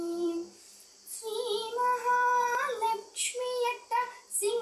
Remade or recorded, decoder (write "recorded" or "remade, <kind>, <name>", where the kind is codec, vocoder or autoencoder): remade, vocoder, BigVGAN v2